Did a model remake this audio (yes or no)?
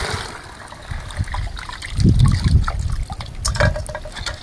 no